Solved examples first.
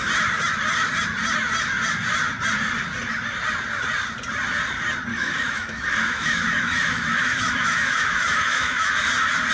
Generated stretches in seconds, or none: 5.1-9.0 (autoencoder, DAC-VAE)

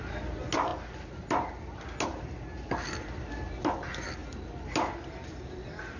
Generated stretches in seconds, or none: none

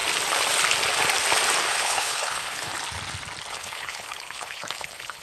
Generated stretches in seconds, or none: 1.7-2.7 (codec, HILCodec); 3.5-5.2